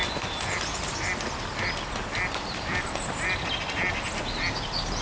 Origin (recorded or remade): recorded